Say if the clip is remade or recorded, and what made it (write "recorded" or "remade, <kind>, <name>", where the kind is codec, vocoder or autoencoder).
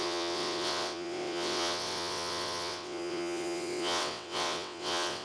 remade, vocoder, WaveNeXt